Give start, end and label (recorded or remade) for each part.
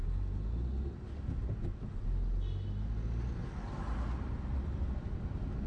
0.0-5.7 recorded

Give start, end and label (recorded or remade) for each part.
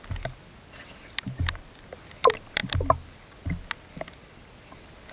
0.0-5.1 recorded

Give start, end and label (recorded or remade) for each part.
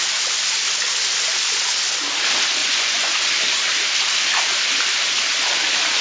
0.0-2.6 recorded; 2.6-3.1 remade; 3.1-6.0 recorded